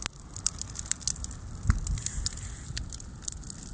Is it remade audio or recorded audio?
recorded